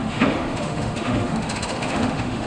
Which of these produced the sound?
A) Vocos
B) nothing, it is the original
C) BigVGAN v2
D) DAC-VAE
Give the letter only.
D